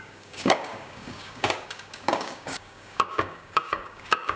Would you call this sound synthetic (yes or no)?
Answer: yes